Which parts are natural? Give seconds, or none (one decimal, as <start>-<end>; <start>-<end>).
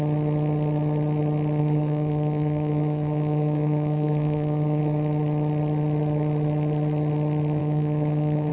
0.0-1.6; 4.8-7.6